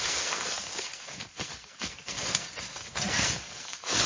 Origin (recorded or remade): remade